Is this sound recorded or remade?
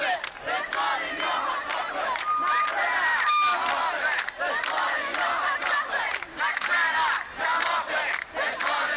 recorded